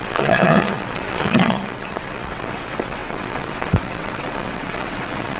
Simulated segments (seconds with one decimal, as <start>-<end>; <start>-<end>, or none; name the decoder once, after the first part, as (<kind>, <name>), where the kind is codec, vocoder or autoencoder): 0.0-5.4 (vocoder, WaveNeXt)